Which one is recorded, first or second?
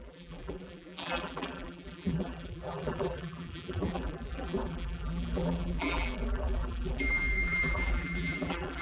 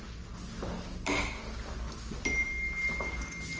second